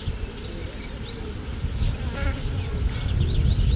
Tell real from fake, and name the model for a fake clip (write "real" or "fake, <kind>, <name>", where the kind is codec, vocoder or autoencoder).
real